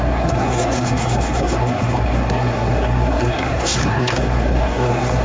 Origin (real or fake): fake